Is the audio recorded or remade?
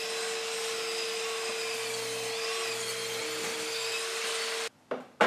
recorded